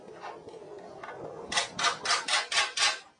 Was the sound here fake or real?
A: real